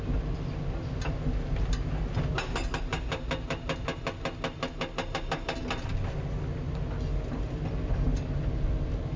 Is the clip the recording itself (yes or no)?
yes